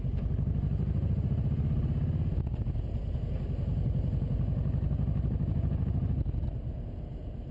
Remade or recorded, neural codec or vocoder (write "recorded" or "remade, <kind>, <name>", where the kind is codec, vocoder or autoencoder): recorded